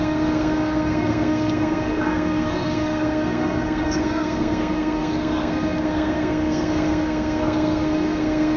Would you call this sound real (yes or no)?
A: no